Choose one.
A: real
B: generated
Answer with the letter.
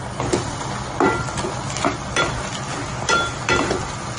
A